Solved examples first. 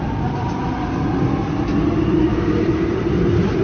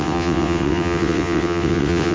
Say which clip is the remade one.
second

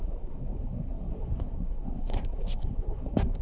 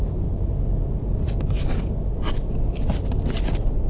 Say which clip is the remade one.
first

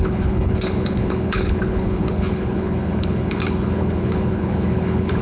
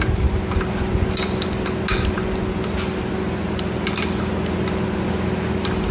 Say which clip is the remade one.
first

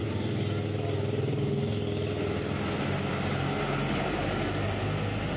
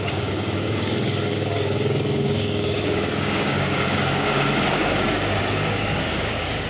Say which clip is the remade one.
second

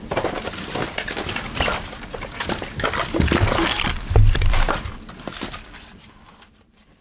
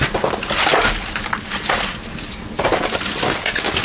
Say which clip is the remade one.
first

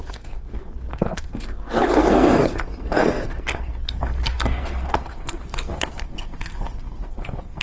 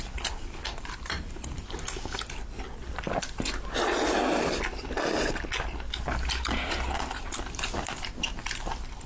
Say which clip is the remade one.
first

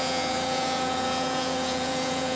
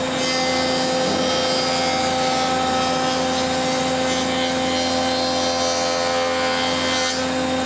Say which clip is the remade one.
first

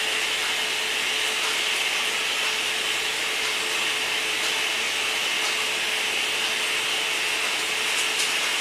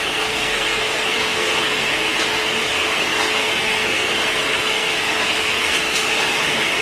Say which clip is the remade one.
second